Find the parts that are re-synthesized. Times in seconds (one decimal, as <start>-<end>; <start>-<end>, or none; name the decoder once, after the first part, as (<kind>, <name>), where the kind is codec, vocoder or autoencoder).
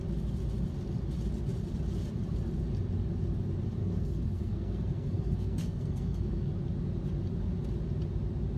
3.8-6.5 (codec, SNAC)